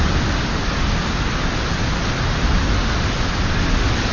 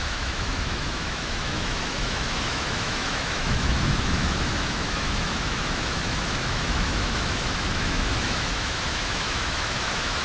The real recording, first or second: first